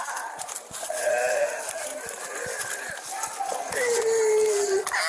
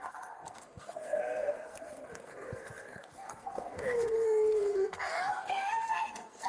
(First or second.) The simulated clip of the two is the second